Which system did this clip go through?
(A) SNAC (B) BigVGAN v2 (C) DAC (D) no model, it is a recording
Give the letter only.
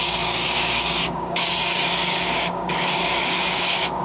C